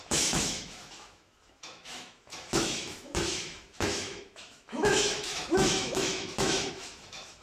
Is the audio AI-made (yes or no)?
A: yes